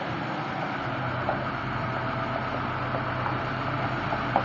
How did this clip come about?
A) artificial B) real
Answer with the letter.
B